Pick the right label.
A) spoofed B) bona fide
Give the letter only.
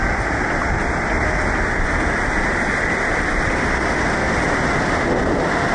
B